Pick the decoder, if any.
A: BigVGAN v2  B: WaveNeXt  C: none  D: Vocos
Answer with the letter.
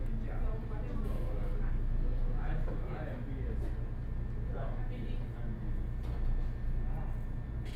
C